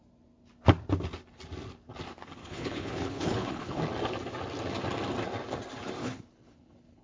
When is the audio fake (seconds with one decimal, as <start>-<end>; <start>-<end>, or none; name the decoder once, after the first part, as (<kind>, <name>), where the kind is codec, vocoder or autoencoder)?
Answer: 2.4-3.8 (codec, HILCodec); 6.0-7.0